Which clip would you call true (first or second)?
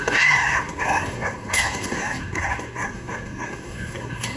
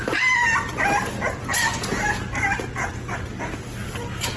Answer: second